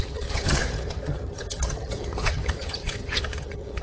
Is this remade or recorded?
remade